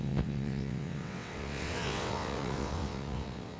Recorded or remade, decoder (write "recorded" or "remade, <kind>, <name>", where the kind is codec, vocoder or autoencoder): remade, vocoder, WaveNeXt